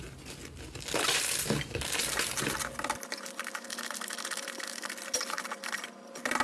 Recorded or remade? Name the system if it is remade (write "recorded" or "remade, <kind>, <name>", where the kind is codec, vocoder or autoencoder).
recorded